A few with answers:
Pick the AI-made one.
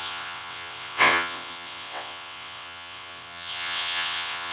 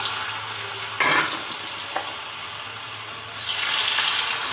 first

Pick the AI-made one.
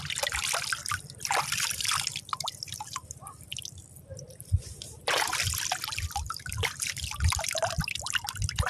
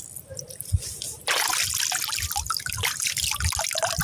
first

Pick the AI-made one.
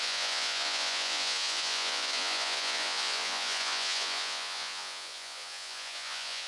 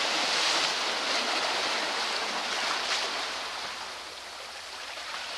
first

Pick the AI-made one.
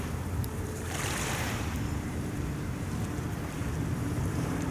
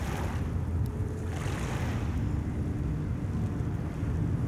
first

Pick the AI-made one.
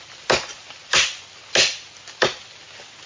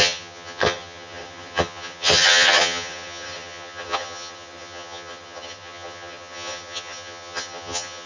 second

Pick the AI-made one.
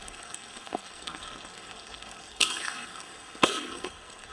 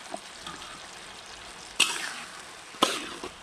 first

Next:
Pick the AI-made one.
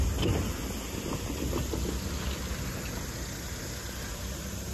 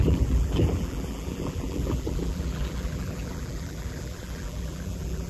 second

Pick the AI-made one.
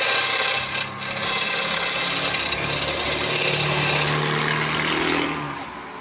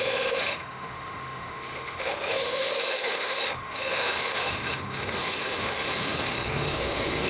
second